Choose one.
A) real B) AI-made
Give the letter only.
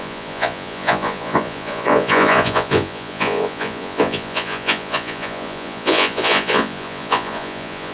B